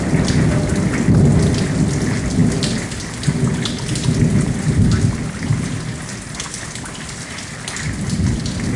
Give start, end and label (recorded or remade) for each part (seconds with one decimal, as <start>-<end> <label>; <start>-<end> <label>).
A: 0.0-8.8 recorded